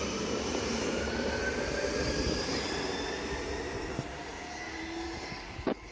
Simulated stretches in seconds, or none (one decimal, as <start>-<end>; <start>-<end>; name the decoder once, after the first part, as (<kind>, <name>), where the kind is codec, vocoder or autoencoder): 0.0-1.4 (vocoder, BigVGAN v2); 3.5-5.9